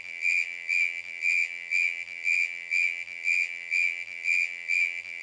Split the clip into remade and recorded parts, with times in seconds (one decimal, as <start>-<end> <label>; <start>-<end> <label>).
0.0-5.2 remade